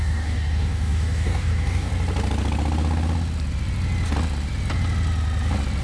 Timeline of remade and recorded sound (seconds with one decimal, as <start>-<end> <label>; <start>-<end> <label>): 0.0-1.9 remade; 1.9-5.8 recorded